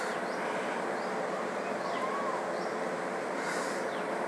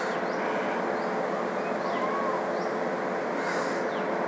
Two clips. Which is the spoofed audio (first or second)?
first